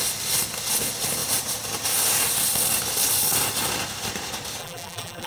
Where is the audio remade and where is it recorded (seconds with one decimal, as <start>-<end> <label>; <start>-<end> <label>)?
0.0-4.6 recorded; 4.6-5.3 remade